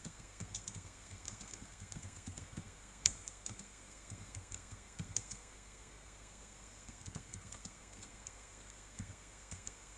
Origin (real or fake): fake